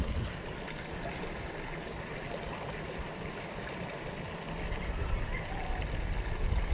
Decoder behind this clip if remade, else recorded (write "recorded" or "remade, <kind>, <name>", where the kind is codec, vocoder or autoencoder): recorded